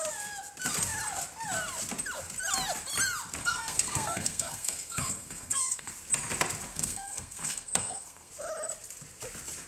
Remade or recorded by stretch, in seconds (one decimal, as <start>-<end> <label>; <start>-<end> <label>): 0.0-3.4 recorded; 3.4-5.9 remade; 5.9-6.7 recorded; 6.7-8.3 remade; 8.3-9.7 recorded